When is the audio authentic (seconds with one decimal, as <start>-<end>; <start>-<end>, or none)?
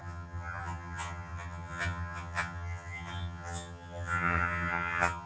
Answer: none